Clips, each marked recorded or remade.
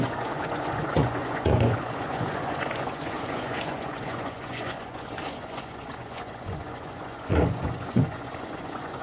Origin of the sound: remade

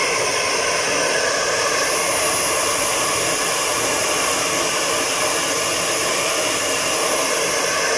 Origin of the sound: recorded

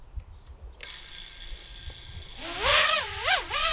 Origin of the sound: recorded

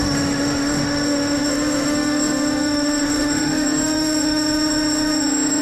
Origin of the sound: remade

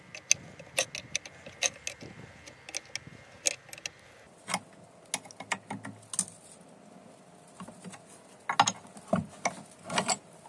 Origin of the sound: recorded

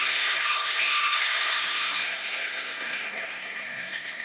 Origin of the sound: remade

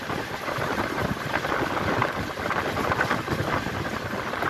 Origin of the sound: recorded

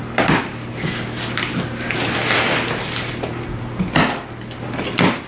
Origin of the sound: recorded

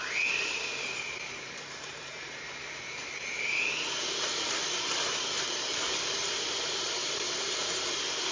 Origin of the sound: remade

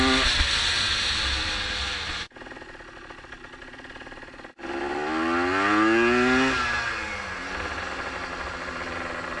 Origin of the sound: recorded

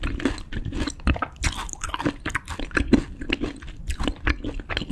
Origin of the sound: recorded